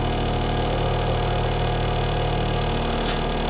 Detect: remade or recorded recorded